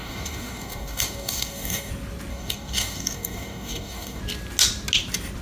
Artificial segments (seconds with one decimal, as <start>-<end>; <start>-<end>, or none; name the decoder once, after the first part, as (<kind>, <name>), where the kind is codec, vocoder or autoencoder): 0.0-1.9 (codec, DAC); 2.3-4.2